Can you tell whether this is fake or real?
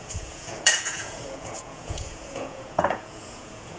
fake